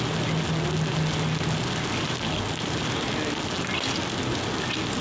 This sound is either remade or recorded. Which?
recorded